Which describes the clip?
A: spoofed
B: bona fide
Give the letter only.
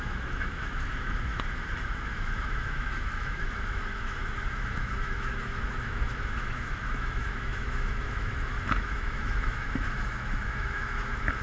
A